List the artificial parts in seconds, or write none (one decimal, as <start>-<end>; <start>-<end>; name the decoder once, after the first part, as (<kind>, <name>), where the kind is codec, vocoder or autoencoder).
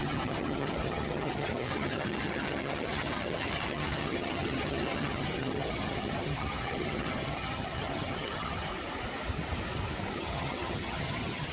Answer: 0.0-8.7 (vocoder, HiFi-GAN); 10.1-11.5